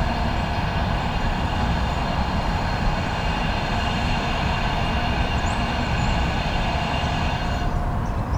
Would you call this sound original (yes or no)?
no